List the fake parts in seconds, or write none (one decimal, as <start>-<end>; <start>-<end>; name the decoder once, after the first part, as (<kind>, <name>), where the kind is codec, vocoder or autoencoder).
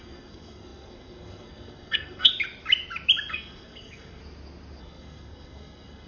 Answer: 0.0-2.3 (codec, SNAC); 3.3-4.2; 4.8-6.1